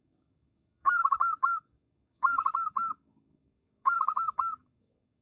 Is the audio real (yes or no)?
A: no